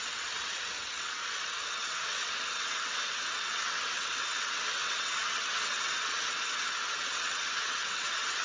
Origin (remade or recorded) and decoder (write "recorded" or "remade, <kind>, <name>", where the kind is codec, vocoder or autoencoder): remade, vocoder, WaveNeXt